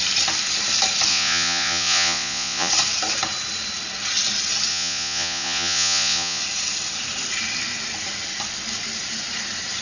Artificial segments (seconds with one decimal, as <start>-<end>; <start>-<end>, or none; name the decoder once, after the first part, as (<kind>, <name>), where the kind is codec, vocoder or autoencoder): 1.1-2.7 (vocoder, Vocos); 4.7-6.4